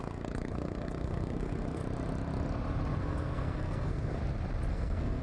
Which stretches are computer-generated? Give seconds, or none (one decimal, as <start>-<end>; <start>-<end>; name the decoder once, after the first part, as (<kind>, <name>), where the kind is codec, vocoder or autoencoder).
0.0-1.8 (codec, SNAC); 3.0-4.2; 4.7-5.2